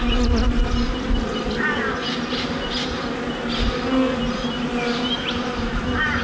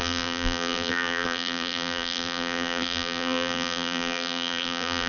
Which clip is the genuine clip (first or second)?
first